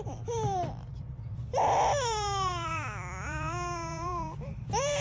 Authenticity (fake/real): fake